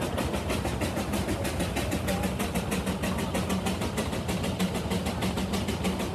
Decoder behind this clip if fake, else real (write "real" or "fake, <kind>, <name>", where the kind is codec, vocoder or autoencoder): real